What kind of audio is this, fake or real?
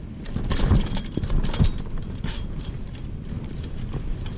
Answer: real